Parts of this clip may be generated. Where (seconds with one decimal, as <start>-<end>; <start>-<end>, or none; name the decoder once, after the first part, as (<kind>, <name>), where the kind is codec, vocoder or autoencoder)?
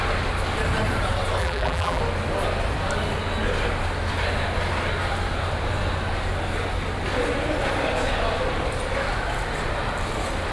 1.4-2.0 (vocoder, BigVGAN v2)